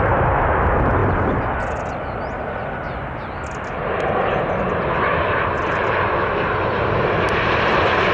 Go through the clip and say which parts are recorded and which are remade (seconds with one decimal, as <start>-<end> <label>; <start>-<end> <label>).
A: 0.0-8.1 recorded